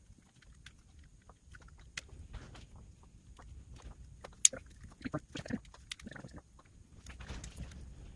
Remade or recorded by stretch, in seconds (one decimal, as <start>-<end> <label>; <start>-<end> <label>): 0.0-8.2 recorded